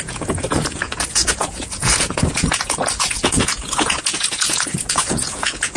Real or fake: fake